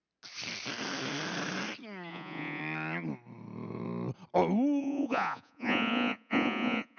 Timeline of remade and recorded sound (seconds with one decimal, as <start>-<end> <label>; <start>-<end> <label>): 0.0-2.1 recorded; 2.1-2.6 remade; 2.6-4.8 recorded; 4.8-7.0 remade